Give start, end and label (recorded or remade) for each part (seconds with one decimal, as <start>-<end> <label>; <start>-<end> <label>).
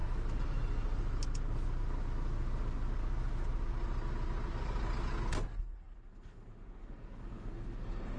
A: 0.0-5.5 recorded; 5.5-8.2 remade